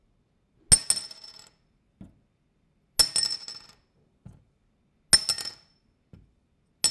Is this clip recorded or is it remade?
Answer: recorded